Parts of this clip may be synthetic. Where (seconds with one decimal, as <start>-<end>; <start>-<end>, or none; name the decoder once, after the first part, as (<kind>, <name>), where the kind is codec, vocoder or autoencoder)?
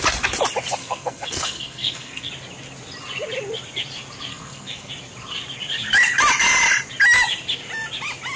0.8-2.3 (codec, SNAC); 4.3-4.9